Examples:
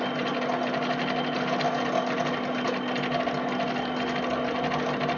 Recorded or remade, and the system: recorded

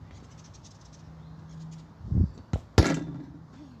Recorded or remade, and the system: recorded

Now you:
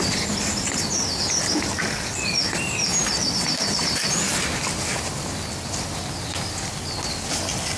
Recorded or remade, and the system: recorded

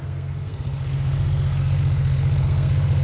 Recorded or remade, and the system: remade, codec, SNAC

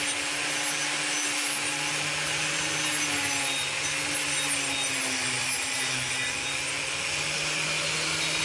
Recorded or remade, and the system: recorded